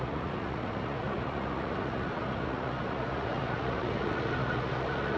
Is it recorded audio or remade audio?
remade